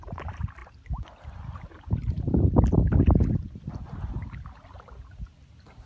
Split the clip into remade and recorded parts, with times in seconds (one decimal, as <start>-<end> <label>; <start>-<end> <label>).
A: 0.0-5.9 recorded